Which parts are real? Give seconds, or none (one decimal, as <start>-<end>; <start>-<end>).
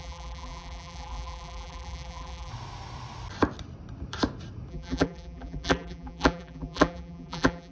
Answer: 2.5-4.7